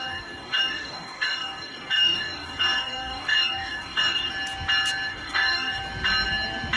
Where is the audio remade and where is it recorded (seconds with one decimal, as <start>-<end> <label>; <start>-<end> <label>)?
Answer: 0.0-4.3 remade; 4.3-5.1 recorded; 5.1-5.8 remade; 5.8-6.8 recorded